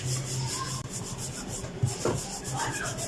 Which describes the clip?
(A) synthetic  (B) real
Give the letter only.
A